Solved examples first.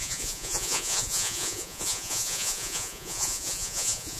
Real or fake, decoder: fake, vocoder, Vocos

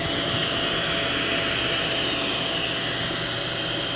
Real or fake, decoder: real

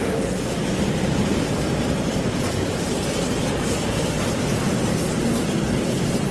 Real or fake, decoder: real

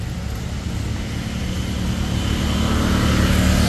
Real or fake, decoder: real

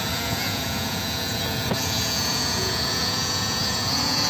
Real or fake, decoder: fake, vocoder, Vocos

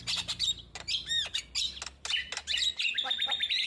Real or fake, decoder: real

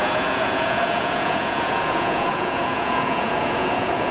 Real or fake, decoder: fake, vocoder, Vocos